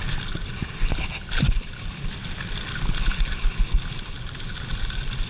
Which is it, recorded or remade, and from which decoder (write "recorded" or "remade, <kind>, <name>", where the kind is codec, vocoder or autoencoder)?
recorded